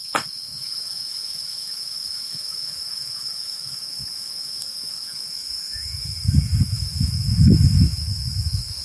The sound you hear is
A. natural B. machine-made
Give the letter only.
B